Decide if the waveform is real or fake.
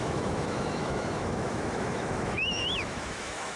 fake